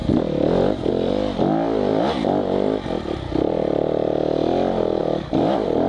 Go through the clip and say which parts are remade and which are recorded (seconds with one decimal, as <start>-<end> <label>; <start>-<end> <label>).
0.0-5.9 recorded